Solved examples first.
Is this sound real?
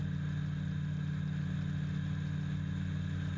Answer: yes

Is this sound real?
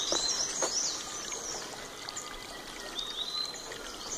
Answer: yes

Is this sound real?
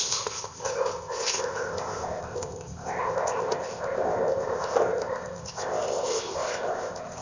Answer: no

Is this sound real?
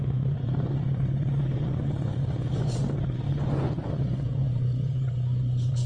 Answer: no